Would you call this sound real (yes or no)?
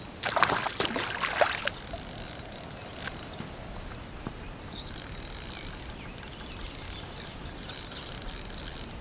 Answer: yes